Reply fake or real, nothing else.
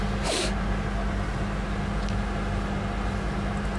real